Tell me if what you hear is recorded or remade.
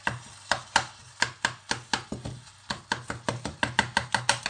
recorded